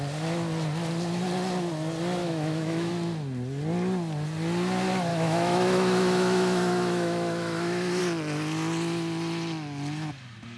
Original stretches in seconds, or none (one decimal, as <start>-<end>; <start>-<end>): 0.0-2.2; 2.9-5.1; 8.0-10.6